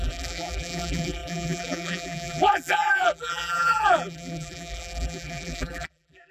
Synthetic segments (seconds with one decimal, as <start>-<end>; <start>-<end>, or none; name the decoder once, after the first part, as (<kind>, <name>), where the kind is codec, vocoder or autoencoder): 0.0-6.3 (vocoder, BigVGAN v2)